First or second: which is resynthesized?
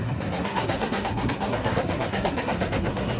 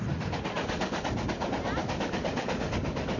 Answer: first